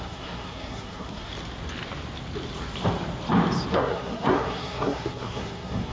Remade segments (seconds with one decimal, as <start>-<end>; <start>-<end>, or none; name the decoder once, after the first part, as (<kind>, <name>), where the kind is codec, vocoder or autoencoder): 0.0-1.3 (codec, SNAC); 3.7-5.9

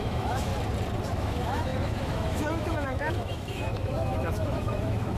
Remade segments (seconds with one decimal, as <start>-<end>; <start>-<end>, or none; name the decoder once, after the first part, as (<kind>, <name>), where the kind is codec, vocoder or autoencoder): 0.0-0.5 (autoencoder, DAC-VAE); 1.1-5.2

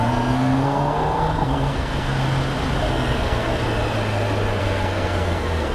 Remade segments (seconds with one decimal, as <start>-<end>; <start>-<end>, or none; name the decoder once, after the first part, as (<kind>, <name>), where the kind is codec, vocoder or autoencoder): 0.0-2.2 (codec, SNAC); 2.9-3.5; 4.6-5.7

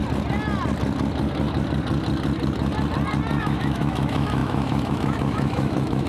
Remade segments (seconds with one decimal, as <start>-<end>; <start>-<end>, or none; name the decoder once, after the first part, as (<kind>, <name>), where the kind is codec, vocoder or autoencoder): 3.4-6.1 (autoencoder, DAC-VAE)

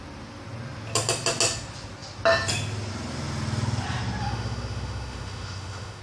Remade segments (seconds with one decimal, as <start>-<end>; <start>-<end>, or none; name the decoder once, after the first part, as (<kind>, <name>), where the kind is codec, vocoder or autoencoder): 4.2-6.0 (autoencoder, DAC-VAE)